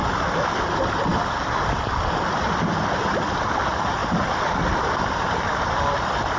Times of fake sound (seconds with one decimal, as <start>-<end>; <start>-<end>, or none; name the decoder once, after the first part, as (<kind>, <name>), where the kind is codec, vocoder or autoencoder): 0.5-6.4 (vocoder, BigVGAN v2)